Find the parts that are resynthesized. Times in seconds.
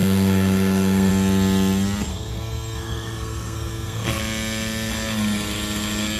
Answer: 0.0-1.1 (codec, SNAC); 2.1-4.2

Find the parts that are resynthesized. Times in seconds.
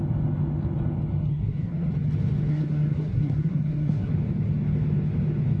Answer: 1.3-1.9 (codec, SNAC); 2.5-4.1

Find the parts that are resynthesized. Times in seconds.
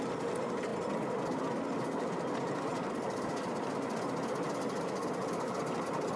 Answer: none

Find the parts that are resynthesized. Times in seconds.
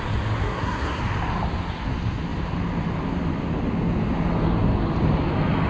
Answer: 0.4-1.0 (codec, SNAC)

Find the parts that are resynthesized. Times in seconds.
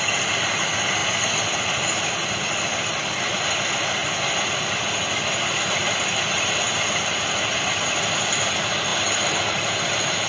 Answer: none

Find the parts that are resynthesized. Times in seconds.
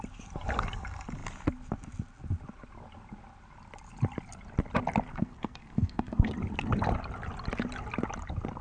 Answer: 5.1-6.3 (codec, SNAC)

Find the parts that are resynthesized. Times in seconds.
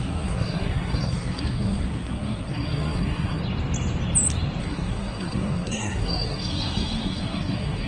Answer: 0.0-3.4 (codec, SNAC); 4.6-7.9